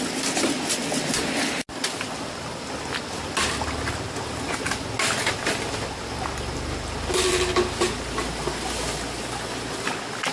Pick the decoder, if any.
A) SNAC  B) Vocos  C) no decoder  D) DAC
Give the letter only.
C